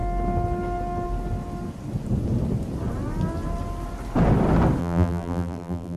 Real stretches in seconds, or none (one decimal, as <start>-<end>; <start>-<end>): 0.0-4.8